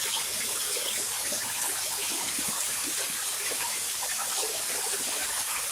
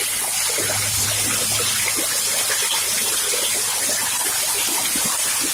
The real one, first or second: second